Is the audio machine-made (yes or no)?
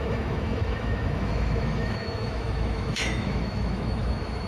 yes